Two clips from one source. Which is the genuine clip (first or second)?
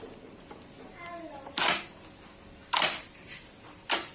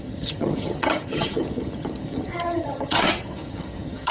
first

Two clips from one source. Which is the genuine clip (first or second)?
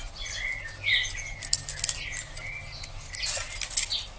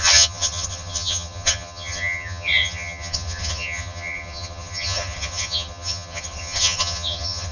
first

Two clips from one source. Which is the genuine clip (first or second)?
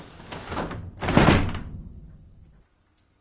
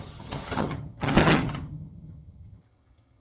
first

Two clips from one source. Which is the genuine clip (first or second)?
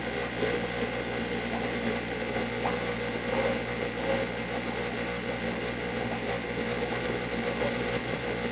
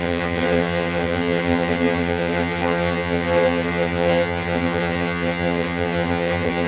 first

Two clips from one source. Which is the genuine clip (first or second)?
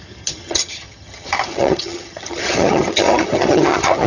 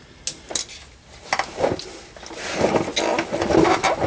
second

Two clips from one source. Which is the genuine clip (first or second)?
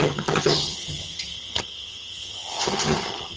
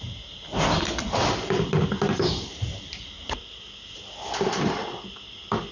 second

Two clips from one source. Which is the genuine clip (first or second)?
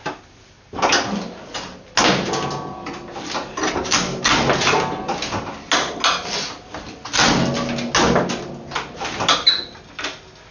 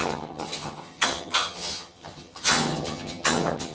first